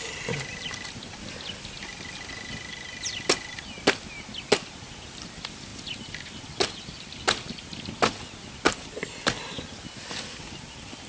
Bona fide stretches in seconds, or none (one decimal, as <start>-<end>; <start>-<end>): 0.0-11.1